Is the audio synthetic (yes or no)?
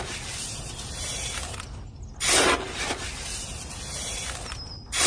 no